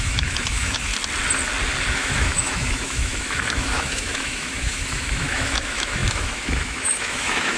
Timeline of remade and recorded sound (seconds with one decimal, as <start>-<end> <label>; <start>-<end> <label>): 0.0-0.9 remade; 0.9-1.9 recorded; 1.9-7.6 remade